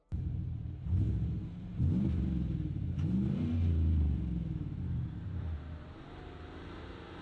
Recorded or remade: remade